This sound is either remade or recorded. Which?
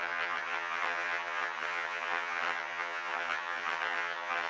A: remade